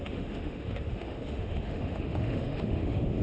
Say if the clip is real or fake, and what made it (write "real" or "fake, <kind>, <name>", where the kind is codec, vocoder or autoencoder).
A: fake, autoencoder, DAC-VAE